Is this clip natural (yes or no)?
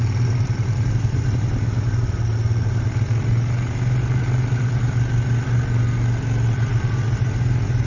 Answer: yes